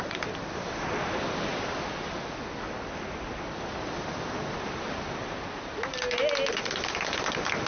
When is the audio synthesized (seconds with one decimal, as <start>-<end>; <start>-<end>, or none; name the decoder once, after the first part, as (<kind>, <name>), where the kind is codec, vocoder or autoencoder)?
none